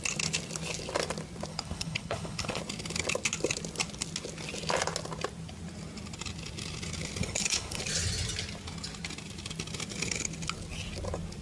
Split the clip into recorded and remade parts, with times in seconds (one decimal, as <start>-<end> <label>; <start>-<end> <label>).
0.0-1.5 recorded; 1.5-2.6 remade; 2.6-7.2 recorded; 7.2-7.8 remade; 7.8-11.4 recorded